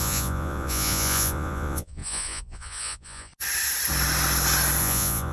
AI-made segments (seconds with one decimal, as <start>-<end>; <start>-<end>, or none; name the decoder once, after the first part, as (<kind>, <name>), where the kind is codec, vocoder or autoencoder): 0.0-3.3 (vocoder, Vocos); 4.8-5.3